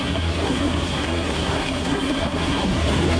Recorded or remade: remade